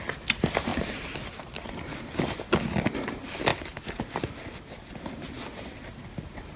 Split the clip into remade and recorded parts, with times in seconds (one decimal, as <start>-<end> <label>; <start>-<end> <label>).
0.0-0.7 recorded; 0.7-1.4 remade; 1.4-6.6 recorded